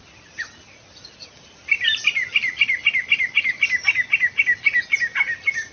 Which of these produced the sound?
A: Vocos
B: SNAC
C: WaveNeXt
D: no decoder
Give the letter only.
D